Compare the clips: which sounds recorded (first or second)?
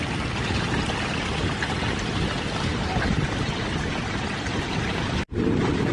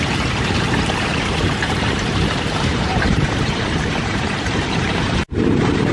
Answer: first